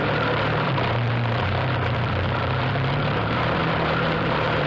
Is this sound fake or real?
fake